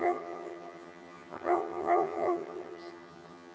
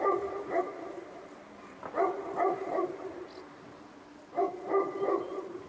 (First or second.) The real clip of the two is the second